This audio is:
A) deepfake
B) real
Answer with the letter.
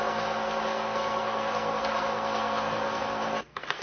A